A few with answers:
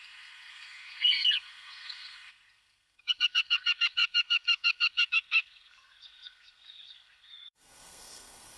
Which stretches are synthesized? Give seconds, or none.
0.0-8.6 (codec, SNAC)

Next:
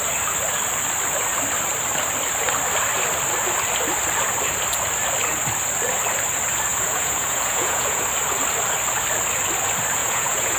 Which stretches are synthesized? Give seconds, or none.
6.7-8.0 (vocoder, Vocos); 10.0-10.6

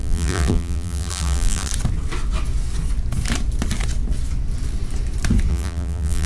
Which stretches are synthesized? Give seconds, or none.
0.0-1.7 (vocoder, BigVGAN v2); 5.5-6.3

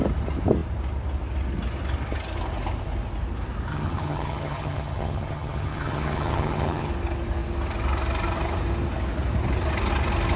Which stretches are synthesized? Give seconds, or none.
3.7-6.9 (vocoder, HiFi-GAN)

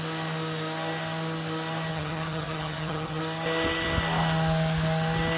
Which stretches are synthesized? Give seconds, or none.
1.9-3.2 (vocoder, HiFi-GAN)

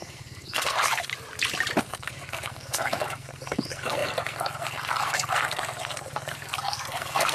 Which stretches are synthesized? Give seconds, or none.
0.0-1.1 (codec, SNAC); 1.8-7.3

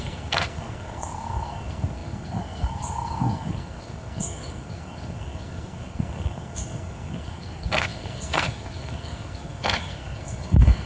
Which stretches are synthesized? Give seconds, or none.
0.0-10.9 (codec, SNAC)

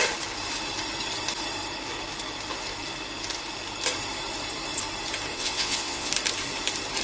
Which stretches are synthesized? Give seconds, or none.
5.3-6.1 (vocoder, WaveNeXt)